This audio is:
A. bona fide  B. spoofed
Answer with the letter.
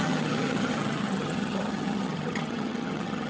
B